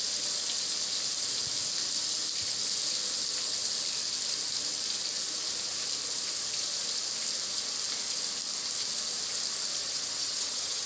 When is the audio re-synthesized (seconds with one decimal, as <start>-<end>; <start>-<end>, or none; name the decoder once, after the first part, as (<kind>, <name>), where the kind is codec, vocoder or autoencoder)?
9.8-10.9 (vocoder, WaveNeXt)